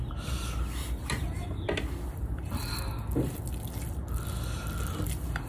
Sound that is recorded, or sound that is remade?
recorded